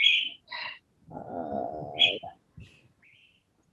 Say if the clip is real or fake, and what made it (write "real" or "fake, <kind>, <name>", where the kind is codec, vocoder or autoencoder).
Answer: real